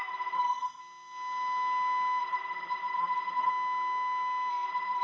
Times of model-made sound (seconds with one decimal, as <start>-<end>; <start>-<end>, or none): 0.0-0.8; 2.2-3.5; 4.5-5.0